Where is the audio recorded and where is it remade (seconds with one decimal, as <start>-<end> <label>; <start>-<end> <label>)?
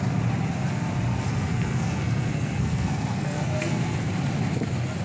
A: 0.0-1.4 recorded; 1.4-4.1 remade; 4.1-5.0 recorded